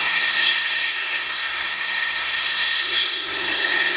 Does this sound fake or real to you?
fake